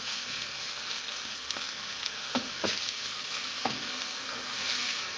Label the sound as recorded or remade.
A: remade